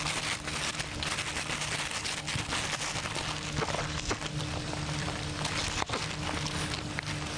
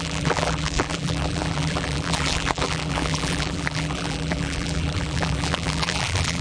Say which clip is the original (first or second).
first